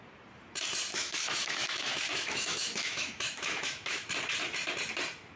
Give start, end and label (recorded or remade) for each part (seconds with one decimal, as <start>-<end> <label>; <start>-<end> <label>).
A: 0.0-0.9 recorded; 0.9-4.1 remade; 4.1-5.4 recorded